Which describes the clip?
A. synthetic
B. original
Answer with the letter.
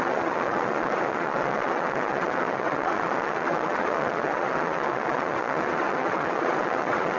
A